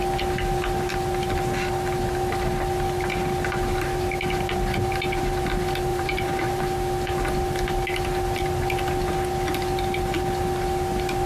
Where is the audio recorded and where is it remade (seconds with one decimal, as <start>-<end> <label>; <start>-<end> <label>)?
0.0-5.9 recorded; 5.9-6.6 remade; 6.6-11.3 recorded